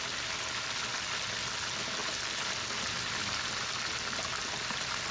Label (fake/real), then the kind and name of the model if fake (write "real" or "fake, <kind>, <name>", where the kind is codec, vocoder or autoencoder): real